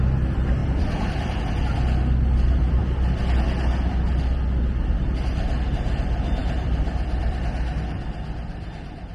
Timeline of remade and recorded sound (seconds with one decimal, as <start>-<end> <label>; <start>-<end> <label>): 0.0-0.6 recorded; 0.6-1.4 remade; 1.4-6.4 recorded; 6.4-7.4 remade; 7.4-9.1 recorded